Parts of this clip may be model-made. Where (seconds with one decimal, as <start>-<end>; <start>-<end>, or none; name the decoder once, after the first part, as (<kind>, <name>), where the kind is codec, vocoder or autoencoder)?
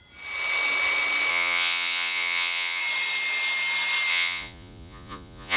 1.3-2.8 (vocoder, Vocos); 4.1-5.6